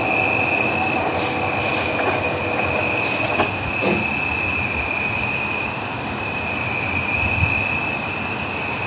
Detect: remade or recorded recorded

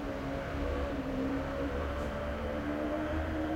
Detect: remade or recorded remade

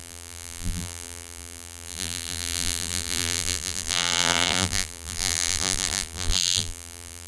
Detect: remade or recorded remade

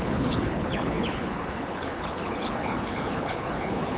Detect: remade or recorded remade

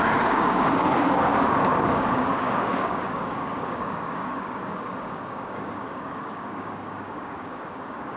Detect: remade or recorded remade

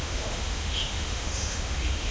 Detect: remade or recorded remade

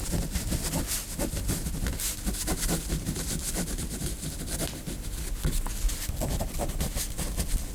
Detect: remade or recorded recorded